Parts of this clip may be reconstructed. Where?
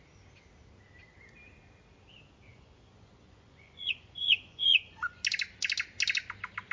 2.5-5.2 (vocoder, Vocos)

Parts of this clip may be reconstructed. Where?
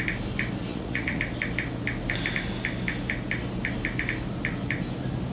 0.7-1.2 (vocoder, Vocos)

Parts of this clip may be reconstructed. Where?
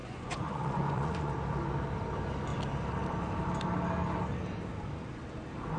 0.0-1.3 (vocoder, Vocos)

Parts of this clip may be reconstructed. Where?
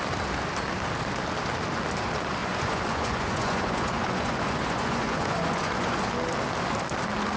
2.4-6.0 (vocoder, Vocos)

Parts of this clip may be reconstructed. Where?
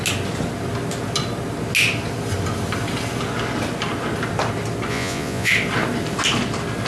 4.9-5.5 (vocoder, Vocos)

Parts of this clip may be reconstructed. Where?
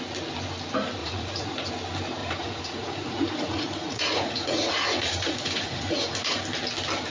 1.0-1.7 (vocoder, Vocos); 2.2-6.4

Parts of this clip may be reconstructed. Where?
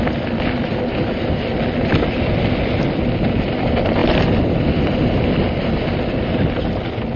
none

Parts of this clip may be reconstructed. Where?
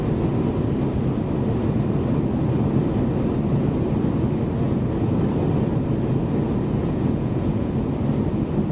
6.8-7.7 (vocoder, Vocos)